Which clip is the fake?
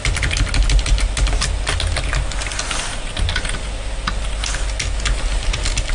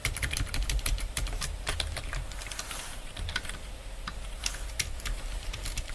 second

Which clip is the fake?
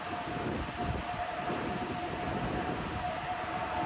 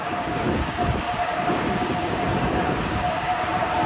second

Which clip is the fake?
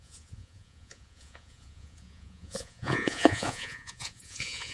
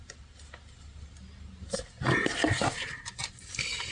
first